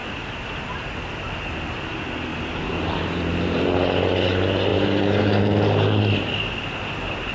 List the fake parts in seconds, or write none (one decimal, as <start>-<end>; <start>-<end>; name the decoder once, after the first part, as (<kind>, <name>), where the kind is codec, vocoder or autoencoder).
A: 0.0-0.7 (vocoder, BigVGAN v2); 2.3-3.7; 4.7-6.0

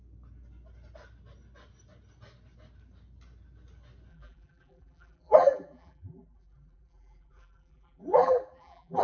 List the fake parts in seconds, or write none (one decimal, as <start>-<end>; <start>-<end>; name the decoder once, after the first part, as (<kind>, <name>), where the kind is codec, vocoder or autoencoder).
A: 4.1-9.0 (vocoder, BigVGAN v2)

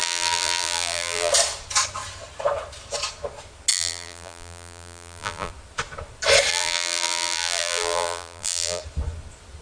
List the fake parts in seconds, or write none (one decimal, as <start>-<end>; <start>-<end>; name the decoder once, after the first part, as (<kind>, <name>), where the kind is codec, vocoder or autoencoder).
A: 0.0-1.3 (vocoder, BigVGAN v2); 3.7-5.5; 6.5-8.8

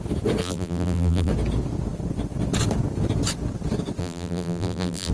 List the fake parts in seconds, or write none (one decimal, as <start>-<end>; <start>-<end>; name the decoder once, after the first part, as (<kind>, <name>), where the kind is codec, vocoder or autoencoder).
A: 0.4-1.3 (vocoder, BigVGAN v2); 4.0-5.1

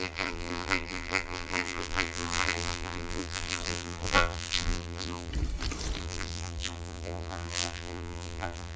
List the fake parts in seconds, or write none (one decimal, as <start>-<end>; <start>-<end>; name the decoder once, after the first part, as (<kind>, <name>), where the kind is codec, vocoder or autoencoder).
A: 0.0-5.3 (vocoder, BigVGAN v2); 6.0-8.8

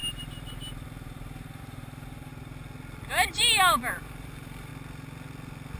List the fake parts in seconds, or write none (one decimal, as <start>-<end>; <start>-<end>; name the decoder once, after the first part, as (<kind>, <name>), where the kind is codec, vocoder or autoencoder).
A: 0.0-2.3 (vocoder, BigVGAN v2); 3.9-4.7

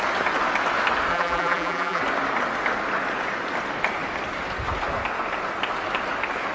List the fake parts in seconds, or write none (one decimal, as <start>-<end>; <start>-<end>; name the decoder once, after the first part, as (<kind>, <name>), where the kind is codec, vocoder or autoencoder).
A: 1.1-2.0 (vocoder, BigVGAN v2)

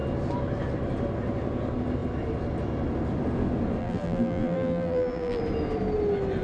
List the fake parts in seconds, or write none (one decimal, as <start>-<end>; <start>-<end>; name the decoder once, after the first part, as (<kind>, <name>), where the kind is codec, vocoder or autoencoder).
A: 3.8-5.4 (vocoder, BigVGAN v2)